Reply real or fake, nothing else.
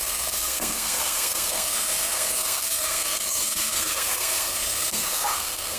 fake